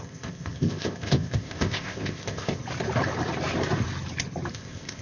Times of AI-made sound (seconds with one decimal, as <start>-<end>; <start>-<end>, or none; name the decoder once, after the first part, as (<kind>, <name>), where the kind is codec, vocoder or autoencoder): 0.0-2.6 (codec, ZipCodec); 4.5-5.0